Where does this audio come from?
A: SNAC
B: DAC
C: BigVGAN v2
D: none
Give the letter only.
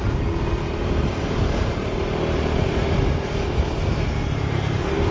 D